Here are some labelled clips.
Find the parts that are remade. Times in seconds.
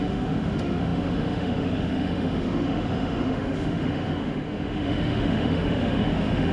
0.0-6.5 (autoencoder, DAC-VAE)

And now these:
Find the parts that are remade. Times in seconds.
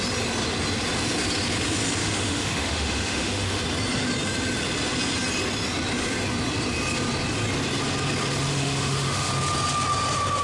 2.0-3.6 (autoencoder, DAC-VAE); 8.5-9.3